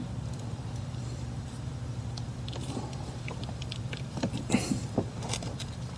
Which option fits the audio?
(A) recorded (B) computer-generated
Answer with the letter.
B